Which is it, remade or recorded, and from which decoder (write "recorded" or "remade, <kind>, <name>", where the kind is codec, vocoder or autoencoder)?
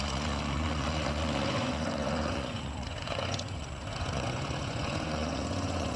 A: remade, vocoder, Vocos